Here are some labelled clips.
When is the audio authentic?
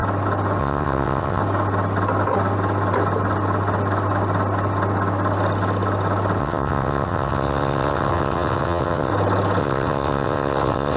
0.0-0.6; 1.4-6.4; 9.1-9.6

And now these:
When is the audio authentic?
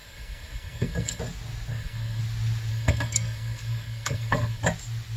1.2-1.7; 2.2-2.7; 4.6-5.2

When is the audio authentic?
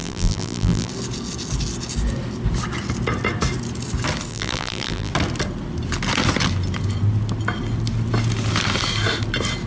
0.9-4.3; 5.1-9.7